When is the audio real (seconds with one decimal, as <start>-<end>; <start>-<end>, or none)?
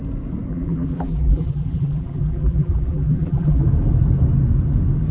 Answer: 0.0-0.5; 3.6-5.1